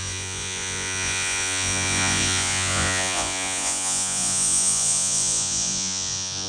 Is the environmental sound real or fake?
fake